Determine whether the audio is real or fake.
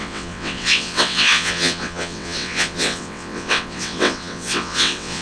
fake